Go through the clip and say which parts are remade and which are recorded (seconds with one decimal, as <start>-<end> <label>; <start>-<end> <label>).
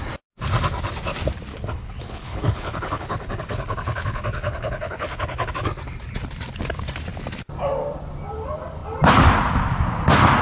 0.0-1.5 recorded; 1.5-5.5 remade; 5.5-10.4 recorded